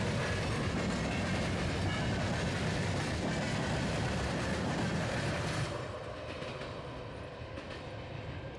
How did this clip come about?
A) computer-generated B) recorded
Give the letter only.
B